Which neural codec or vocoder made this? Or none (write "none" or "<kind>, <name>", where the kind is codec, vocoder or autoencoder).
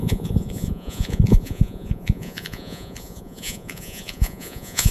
vocoder, Vocos